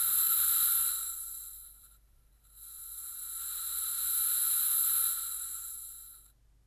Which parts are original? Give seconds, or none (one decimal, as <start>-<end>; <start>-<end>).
0.0-0.4; 2.3-2.8; 5.4-6.7